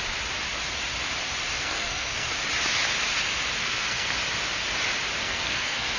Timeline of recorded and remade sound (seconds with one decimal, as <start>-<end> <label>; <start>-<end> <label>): 0.0-1.5 recorded; 1.5-2.3 remade; 2.3-3.6 recorded; 3.6-4.1 remade; 4.1-5.2 recorded; 5.2-6.0 remade